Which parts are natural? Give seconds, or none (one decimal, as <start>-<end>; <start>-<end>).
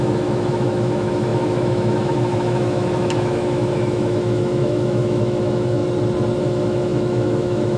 5.8-6.4